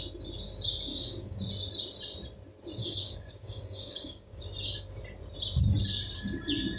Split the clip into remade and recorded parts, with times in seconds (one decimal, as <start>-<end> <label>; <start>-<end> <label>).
0.0-0.9 recorded; 0.9-1.4 remade; 1.4-2.8 recorded; 2.8-4.4 remade; 4.4-6.8 recorded